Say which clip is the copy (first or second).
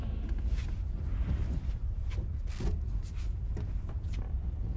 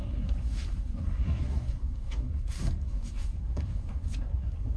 second